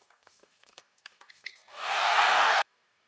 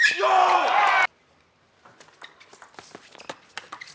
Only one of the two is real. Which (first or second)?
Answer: second